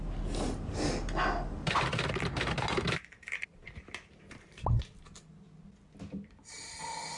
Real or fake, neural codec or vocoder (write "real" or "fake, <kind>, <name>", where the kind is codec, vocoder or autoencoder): real